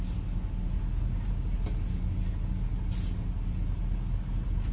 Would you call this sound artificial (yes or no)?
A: no